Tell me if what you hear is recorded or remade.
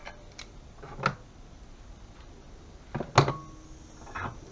recorded